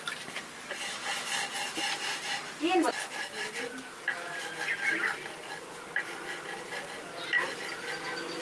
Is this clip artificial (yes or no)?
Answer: no